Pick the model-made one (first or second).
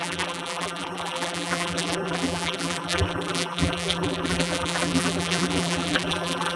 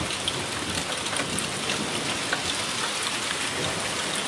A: first